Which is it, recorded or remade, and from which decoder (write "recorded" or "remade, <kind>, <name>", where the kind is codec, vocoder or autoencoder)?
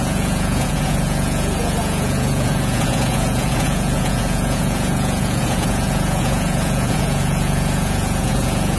remade, vocoder, Vocos